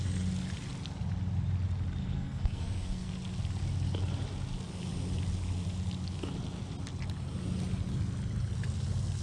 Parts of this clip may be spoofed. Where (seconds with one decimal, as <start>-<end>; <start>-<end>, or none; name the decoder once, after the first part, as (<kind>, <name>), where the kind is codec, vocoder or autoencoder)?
2.0-3.1 (codec, SNAC)

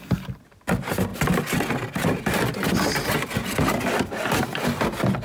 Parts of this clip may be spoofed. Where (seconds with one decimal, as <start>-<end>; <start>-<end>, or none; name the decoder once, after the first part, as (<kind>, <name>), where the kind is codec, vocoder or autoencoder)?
none

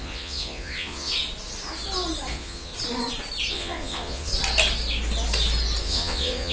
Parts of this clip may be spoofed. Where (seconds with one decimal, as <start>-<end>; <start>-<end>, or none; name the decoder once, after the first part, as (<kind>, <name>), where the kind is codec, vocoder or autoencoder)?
0.0-1.1 (vocoder, Vocos); 2.3-2.7; 3.5-4.3; 5.8-6.5

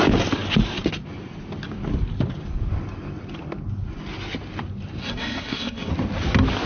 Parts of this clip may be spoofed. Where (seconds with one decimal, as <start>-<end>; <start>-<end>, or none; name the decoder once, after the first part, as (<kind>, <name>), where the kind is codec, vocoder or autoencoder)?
5.0-5.9 (codec, SNAC)

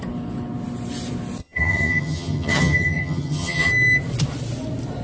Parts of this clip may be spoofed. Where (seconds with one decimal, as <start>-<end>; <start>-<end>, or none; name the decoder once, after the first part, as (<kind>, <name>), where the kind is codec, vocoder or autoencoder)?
1.4-3.7 (vocoder, HiFi-GAN)

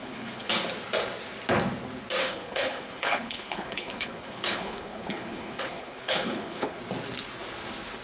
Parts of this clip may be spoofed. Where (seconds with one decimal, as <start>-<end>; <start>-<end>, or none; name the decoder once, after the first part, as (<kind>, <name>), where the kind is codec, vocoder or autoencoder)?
0.0-0.5 (codec, HILCodec); 2.2-6.8

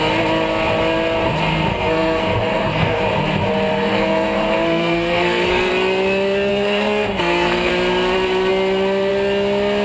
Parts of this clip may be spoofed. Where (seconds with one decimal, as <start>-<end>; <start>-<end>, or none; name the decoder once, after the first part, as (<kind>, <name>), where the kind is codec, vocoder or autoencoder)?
1.7-3.0 (codec, SNAC); 3.7-5.7; 6.5-7.7